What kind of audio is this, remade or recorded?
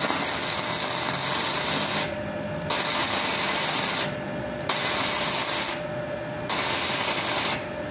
recorded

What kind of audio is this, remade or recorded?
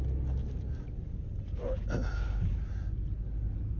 recorded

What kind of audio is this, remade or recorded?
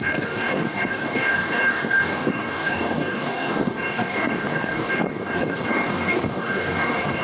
remade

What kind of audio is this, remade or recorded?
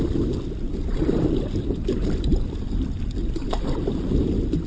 recorded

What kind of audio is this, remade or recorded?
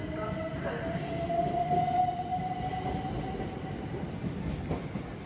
recorded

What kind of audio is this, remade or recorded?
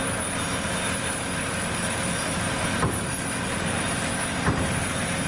recorded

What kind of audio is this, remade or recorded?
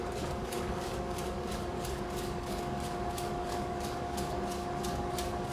remade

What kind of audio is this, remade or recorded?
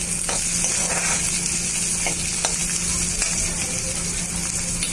recorded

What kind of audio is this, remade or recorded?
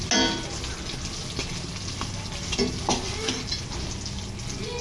recorded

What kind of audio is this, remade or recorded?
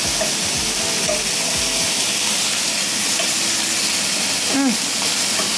recorded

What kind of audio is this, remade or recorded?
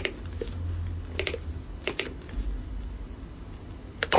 recorded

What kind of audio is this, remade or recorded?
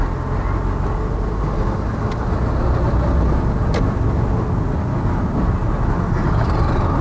recorded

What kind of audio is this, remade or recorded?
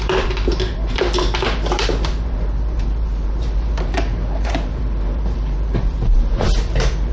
remade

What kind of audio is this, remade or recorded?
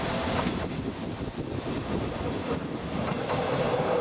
recorded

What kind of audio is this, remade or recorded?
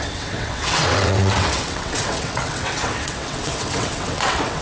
remade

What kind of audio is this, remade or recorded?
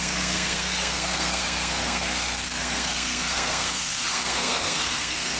remade